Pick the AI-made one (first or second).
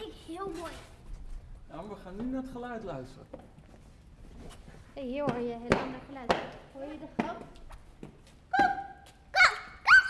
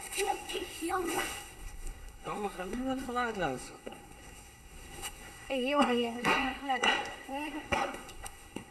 second